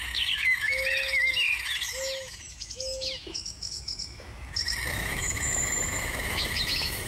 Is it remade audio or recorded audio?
remade